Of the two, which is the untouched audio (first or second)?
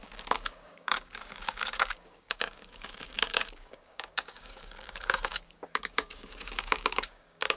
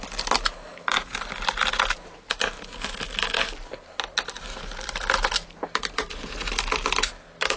second